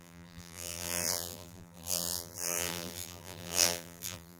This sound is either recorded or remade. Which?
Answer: remade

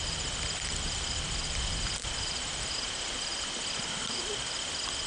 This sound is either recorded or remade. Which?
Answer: remade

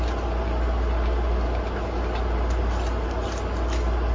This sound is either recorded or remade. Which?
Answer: recorded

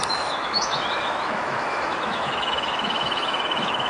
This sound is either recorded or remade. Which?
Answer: remade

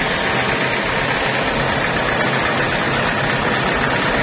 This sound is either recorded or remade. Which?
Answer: recorded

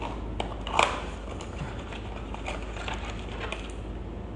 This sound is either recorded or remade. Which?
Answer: recorded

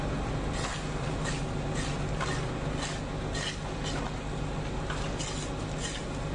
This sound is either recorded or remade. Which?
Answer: recorded